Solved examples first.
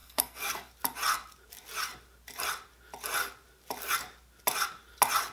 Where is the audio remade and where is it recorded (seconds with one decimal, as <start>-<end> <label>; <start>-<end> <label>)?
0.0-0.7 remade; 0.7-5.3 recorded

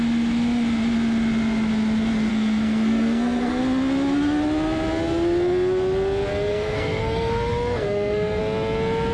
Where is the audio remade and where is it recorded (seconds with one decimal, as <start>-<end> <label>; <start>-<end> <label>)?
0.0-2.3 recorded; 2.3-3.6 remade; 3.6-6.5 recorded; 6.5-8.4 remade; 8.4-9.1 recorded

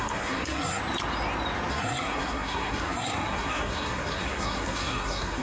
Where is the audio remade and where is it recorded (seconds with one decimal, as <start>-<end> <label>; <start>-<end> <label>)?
0.0-0.8 remade; 0.8-1.7 recorded; 1.7-5.4 remade

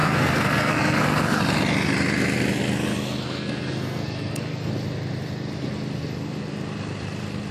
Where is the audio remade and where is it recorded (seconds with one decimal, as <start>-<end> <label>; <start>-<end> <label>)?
0.0-1.4 remade; 1.4-2.9 recorded; 2.9-4.7 remade; 4.7-7.5 recorded